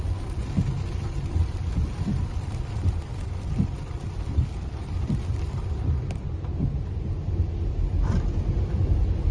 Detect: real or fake fake